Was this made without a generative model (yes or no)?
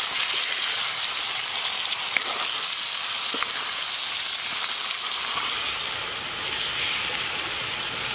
yes